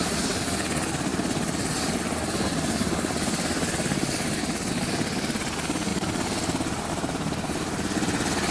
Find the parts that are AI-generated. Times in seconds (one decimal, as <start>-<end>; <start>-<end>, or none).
none